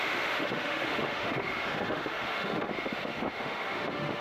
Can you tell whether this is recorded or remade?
remade